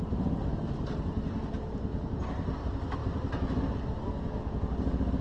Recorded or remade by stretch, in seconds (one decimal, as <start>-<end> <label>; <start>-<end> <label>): 0.0-2.2 remade; 2.2-3.0 recorded; 3.0-3.7 remade; 3.7-5.2 recorded